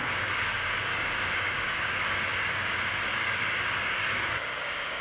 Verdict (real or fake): fake